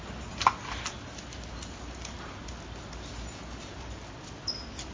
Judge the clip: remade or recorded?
recorded